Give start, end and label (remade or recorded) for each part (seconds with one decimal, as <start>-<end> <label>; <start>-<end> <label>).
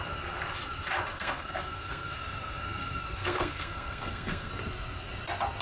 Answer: 0.0-1.1 recorded; 1.1-4.5 remade; 4.5-5.6 recorded